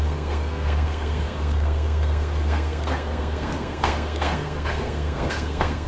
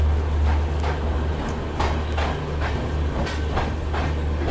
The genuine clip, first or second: second